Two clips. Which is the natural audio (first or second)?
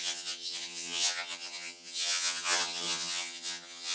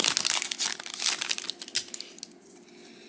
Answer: second